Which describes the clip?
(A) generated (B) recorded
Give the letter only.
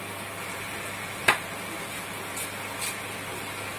B